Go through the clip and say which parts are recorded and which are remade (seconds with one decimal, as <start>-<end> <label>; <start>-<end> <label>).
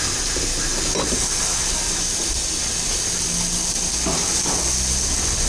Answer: 0.0-5.5 recorded